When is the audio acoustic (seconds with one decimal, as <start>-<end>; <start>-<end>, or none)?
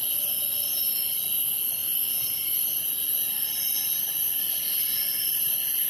0.0-5.9